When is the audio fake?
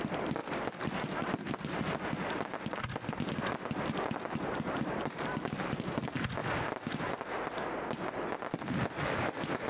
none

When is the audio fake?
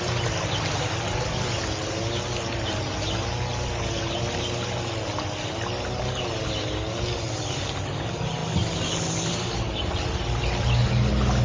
none